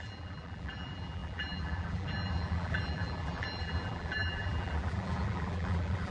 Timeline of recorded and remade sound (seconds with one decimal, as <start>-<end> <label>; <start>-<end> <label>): 0.0-6.1 remade